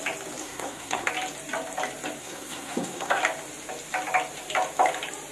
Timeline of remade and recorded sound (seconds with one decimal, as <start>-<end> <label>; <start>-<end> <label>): 0.0-0.4 recorded; 0.4-1.1 remade; 1.1-2.2 recorded; 2.2-3.2 remade; 3.2-5.3 recorded